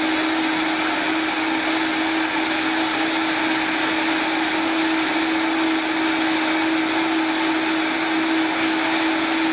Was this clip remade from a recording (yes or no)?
no